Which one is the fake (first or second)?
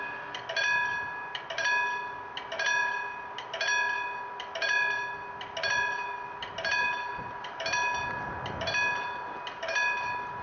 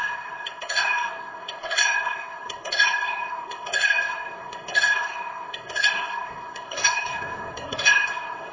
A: second